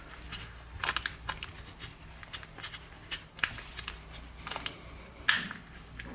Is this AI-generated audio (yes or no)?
no